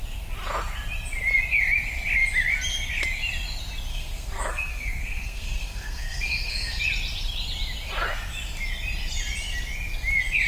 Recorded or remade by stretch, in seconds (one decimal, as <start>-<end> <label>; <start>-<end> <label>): 0.0-3.9 recorded; 3.9-6.8 remade; 6.8-10.5 recorded